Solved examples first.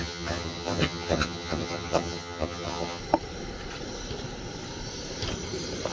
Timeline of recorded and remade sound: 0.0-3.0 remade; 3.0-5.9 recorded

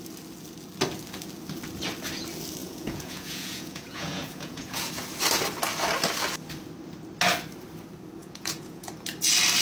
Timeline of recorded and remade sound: 0.0-2.6 recorded; 2.6-4.9 remade; 4.9-8.2 recorded; 8.2-8.9 remade; 8.9-9.6 recorded

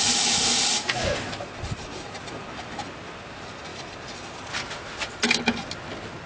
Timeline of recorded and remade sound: 0.0-0.8 remade; 0.8-1.3 recorded; 1.3-2.4 remade; 2.4-3.0 recorded; 3.0-5.4 remade; 5.4-6.3 recorded

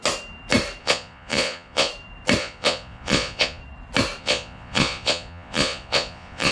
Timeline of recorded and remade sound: 0.0-0.8 recorded; 0.8-1.9 remade; 1.9-2.4 recorded; 2.4-3.6 remade; 3.6-4.2 recorded; 4.2-6.5 remade

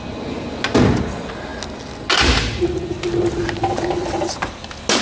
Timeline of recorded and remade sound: 0.0-5.0 recorded

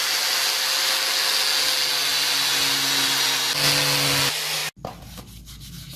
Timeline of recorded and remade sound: 0.0-6.0 recorded

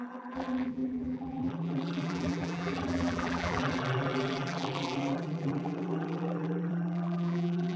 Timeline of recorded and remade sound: 0.0-7.8 remade

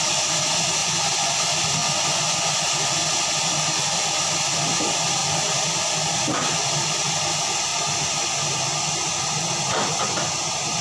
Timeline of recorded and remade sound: 0.0-0.8 recorded; 0.8-1.4 remade; 1.4-1.8 recorded; 1.8-2.8 remade; 2.8-10.8 recorded